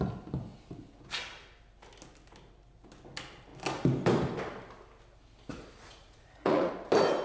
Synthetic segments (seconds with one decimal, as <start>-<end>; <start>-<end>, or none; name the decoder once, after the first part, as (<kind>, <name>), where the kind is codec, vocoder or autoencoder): 5.5-6.7 (vocoder, Vocos)